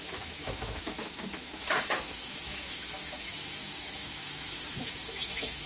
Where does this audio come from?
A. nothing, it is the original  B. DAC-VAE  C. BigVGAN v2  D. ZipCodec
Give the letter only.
B